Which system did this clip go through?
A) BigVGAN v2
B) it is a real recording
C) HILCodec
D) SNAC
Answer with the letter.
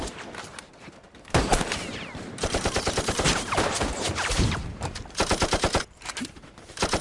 A